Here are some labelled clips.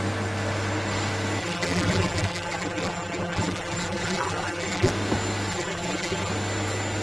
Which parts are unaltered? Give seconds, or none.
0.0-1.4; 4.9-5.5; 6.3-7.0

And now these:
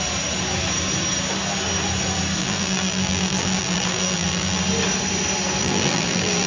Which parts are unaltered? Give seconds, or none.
0.0-2.4; 4.6-5.6

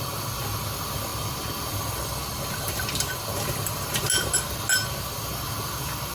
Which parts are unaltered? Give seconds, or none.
0.0-6.1

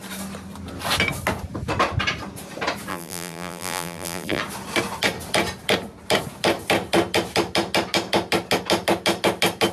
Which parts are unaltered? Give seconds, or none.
0.0-2.9; 4.4-9.7

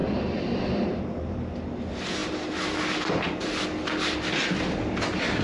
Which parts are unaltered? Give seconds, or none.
0.0-5.4

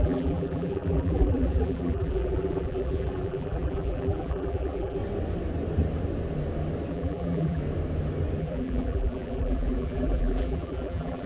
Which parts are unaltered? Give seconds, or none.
5.0-6.9; 7.6-8.4

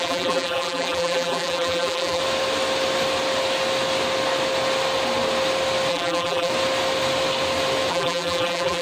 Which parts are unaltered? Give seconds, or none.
2.2-5.9; 6.5-7.9

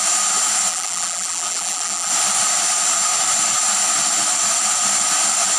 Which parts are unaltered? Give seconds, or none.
0.0-0.7; 2.1-5.6